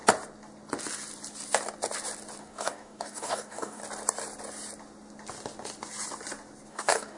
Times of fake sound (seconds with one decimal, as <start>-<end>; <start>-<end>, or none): 2.4-3.8; 6.7-7.2